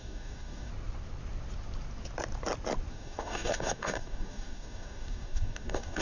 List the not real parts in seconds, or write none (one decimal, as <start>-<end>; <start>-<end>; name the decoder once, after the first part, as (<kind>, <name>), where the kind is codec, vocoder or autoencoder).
0.0-0.7 (codec, DAC); 2.9-6.0